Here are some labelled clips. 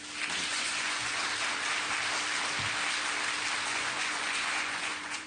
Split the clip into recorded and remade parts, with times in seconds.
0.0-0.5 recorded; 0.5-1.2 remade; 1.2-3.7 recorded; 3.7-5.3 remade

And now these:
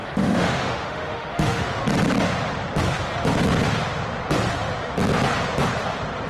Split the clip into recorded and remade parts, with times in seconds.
0.0-1.8 remade; 1.8-6.3 recorded